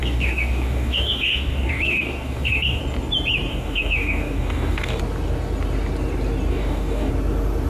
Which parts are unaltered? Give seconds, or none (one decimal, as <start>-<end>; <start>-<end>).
2.8-3.5; 5.0-6.5; 7.1-7.7